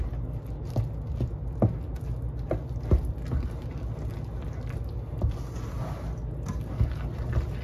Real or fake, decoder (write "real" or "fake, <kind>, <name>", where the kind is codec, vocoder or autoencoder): real